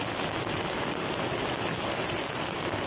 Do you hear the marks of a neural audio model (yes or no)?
no